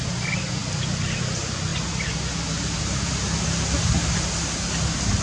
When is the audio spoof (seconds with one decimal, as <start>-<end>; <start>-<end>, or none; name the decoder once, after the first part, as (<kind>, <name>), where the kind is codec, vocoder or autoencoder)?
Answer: none